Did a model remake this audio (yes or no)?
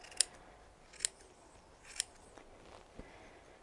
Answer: no